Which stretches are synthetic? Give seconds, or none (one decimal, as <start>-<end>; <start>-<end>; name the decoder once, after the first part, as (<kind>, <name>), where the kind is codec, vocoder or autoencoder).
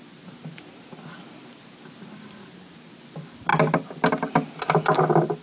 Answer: none